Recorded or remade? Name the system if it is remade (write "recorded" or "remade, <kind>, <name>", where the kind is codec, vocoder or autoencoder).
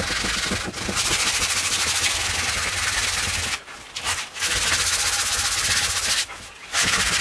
recorded